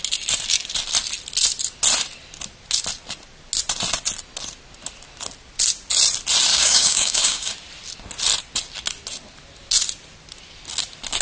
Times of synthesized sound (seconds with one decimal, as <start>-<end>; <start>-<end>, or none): 6.5-7.5